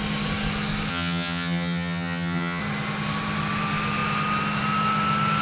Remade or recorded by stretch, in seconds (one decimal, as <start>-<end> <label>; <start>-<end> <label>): 0.0-0.9 recorded; 0.9-2.6 remade; 2.6-5.4 recorded